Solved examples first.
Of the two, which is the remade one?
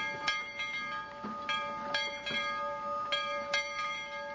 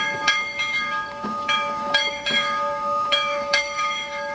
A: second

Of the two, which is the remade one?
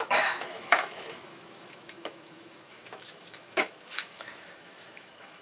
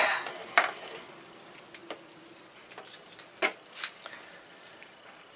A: first